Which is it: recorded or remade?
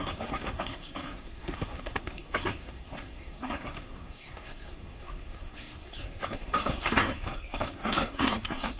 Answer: remade